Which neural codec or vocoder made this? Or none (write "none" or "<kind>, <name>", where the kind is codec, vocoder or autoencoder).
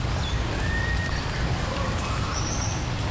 none